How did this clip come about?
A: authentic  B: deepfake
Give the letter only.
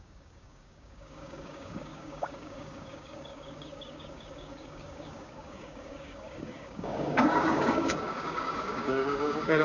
B